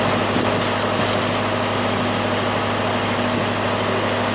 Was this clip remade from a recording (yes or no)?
no